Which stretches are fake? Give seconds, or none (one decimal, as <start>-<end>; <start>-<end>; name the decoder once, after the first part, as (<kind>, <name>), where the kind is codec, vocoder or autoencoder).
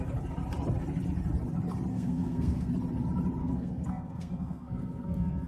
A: 1.9-2.7 (codec, SNAC); 3.4-5.5